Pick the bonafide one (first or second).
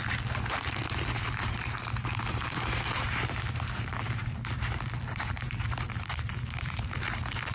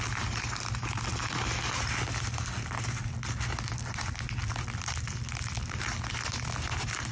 second